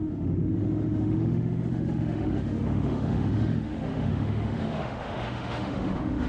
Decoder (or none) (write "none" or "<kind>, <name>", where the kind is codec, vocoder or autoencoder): autoencoder, DAC-VAE